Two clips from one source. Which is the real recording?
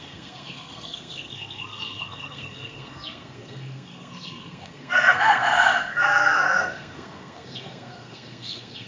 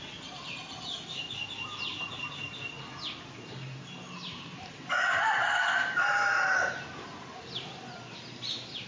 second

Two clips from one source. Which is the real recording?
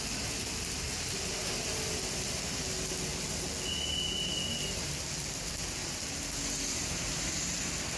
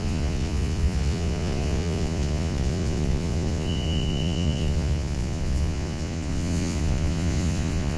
first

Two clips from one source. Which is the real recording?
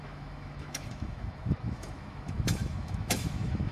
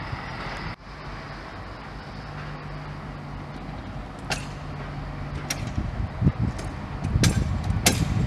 second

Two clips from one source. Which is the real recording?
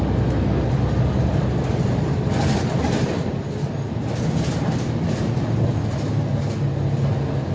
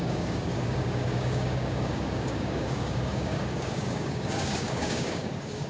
first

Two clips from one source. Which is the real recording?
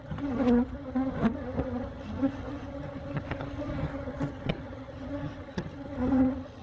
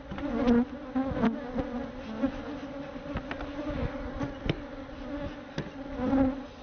second